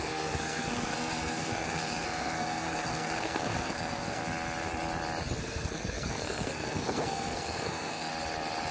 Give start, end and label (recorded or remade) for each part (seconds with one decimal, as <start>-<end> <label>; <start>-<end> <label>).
0.0-4.2 remade; 4.2-5.4 recorded; 5.4-8.1 remade; 8.1-8.7 recorded